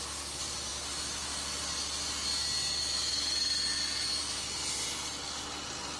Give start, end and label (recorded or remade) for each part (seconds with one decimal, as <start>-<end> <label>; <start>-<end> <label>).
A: 0.0-6.0 recorded